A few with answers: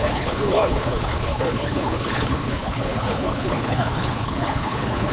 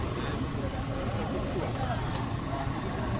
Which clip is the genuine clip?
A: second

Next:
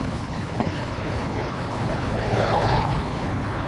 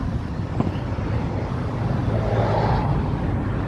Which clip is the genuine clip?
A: second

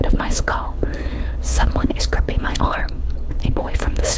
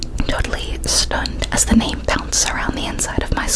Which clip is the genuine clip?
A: second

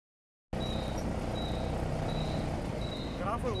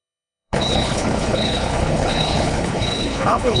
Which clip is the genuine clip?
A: first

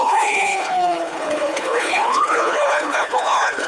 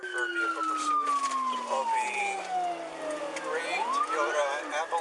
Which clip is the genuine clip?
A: second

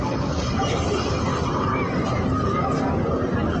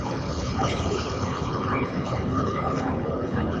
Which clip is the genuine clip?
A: first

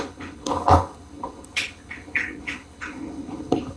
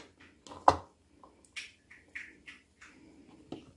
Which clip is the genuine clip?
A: second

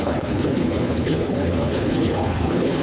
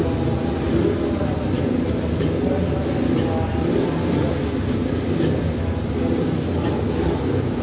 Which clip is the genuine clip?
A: second